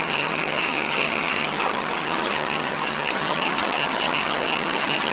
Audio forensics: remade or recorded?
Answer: remade